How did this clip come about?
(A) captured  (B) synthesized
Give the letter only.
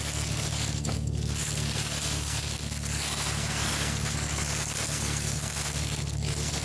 B